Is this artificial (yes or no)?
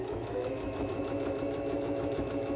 yes